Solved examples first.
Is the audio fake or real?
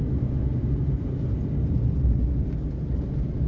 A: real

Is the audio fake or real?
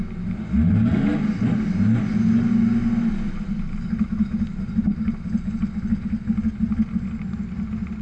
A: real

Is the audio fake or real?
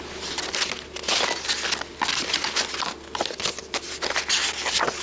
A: real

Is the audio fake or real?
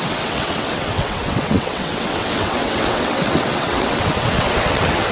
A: fake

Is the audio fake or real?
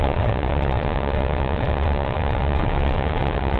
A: fake